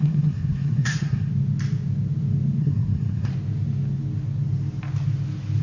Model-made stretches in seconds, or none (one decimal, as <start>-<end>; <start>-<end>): 0.0-1.3; 2.6-3.3